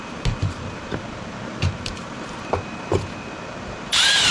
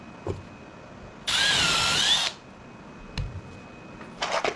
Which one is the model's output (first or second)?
first